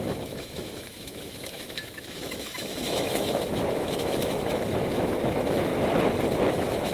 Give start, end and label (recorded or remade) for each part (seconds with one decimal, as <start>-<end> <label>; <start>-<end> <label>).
0.0-5.7 remade; 5.7-6.5 recorded; 6.5-6.9 remade